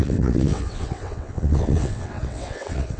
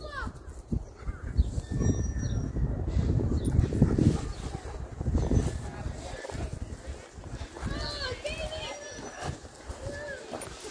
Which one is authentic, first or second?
second